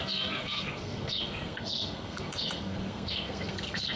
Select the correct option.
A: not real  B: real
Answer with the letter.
A